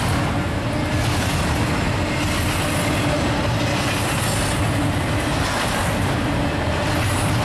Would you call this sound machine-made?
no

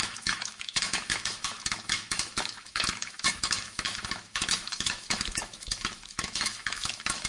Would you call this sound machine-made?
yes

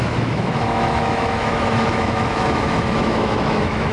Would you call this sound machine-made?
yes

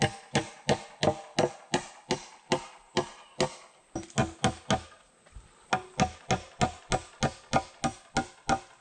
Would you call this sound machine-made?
no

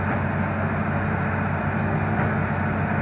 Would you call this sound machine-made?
no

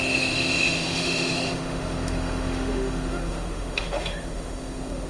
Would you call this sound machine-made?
yes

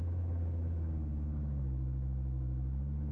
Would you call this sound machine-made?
yes